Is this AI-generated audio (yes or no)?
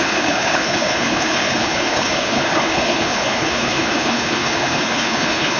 yes